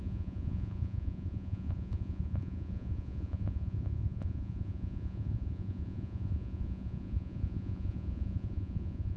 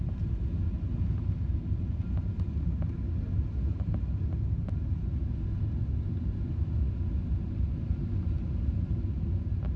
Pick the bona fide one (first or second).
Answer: second